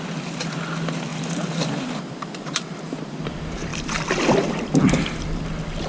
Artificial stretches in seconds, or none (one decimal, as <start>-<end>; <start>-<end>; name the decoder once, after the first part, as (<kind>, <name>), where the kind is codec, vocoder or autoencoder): 1.1-2.9 (vocoder, BigVGAN v2); 3.7-5.4

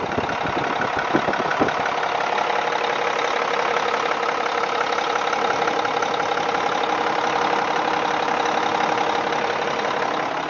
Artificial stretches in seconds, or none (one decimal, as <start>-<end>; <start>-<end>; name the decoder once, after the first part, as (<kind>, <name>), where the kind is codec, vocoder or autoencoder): none

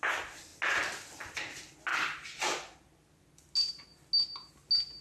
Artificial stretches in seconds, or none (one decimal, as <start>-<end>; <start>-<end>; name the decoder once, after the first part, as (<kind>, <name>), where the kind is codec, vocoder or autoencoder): none

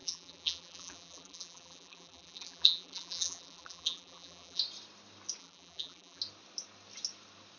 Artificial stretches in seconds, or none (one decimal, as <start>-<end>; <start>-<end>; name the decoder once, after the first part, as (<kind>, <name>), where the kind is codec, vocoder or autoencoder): 0.0-4.6 (vocoder, BigVGAN v2); 5.4-6.2